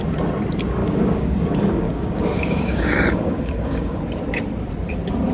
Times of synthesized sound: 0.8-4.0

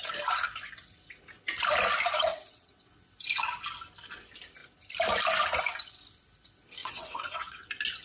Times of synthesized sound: 2.3-2.9; 6.8-7.6

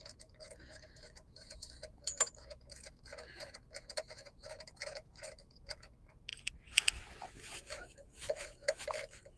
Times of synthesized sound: 0.0-6.3; 7.4-9.4